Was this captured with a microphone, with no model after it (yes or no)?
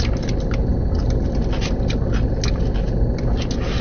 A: yes